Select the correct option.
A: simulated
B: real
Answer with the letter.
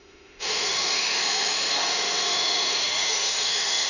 A